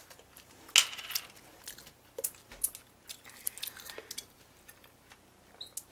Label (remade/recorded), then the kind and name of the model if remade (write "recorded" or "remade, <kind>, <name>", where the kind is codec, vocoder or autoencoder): recorded